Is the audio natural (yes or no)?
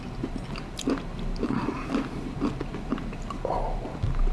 yes